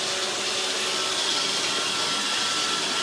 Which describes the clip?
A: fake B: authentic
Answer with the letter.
B